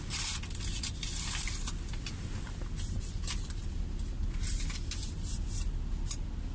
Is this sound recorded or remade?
recorded